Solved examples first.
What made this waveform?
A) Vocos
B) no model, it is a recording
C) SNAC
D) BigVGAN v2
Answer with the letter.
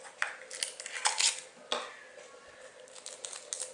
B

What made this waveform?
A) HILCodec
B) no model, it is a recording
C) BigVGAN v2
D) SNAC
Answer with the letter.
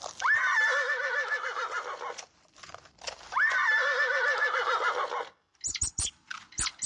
B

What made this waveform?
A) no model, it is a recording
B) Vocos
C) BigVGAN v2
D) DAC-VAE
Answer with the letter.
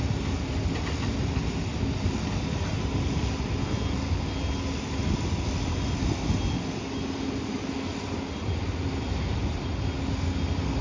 A